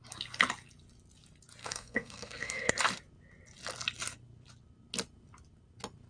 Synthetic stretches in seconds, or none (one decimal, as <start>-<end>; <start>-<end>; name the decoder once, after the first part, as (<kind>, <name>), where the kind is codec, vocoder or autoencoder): 1.6-2.7 (codec, SNAC)

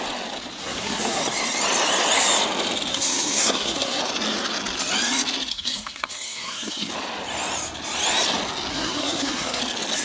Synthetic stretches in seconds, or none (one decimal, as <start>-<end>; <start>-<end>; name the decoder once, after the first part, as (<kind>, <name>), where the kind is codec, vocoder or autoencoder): 0.6-1.2 (codec, SNAC); 2.9-4.0; 5.5-6.9; 8.7-9.6

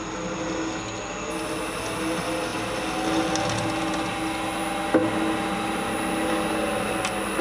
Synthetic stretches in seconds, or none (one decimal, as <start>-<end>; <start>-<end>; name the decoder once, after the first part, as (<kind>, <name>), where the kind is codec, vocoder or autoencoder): none

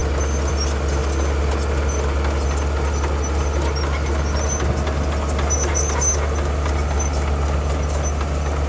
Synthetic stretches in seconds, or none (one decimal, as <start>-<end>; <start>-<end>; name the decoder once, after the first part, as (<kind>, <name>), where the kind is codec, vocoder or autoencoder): none

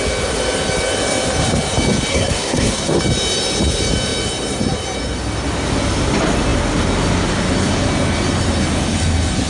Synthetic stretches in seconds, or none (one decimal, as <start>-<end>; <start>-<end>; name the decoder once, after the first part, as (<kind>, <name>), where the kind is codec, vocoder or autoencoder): 2.1-3.0 (codec, SNAC)

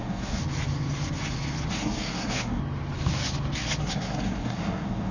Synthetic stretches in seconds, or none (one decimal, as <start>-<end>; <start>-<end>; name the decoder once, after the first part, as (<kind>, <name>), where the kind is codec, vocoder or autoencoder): 0.0-0.4 (codec, SNAC); 1.7-2.6; 3.8-5.1

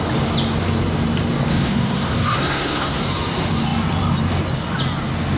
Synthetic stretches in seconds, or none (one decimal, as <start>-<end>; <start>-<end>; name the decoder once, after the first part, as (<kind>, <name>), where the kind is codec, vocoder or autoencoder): 1.5-3.0 (codec, SNAC)

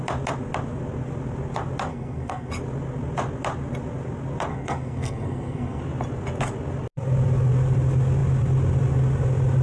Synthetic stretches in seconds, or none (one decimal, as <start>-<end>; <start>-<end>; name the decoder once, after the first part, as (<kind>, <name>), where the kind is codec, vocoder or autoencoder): 1.9-2.5 (codec, SNAC); 4.5-5.8